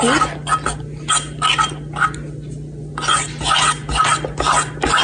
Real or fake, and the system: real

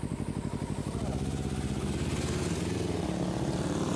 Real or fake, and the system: real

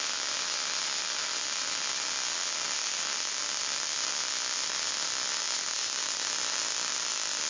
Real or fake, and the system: real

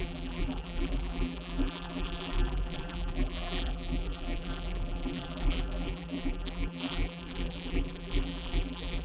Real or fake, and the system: fake, vocoder, BigVGAN v2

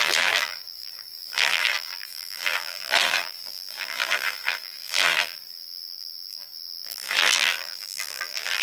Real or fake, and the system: fake, vocoder, BigVGAN v2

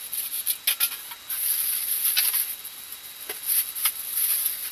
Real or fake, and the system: real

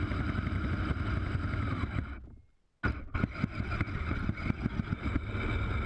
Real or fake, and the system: real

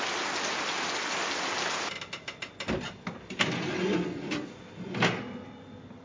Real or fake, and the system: real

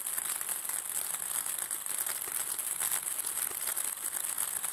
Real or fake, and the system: real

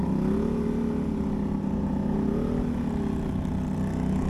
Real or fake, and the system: real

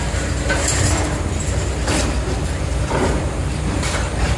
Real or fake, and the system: fake, vocoder, BigVGAN v2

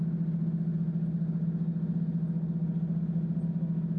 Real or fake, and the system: real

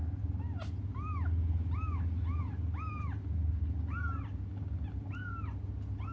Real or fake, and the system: real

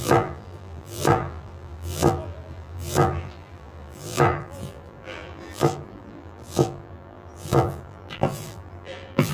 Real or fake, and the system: fake, vocoder, BigVGAN v2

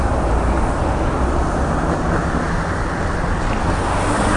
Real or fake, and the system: real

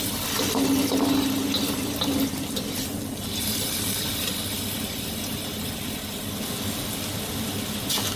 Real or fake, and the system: real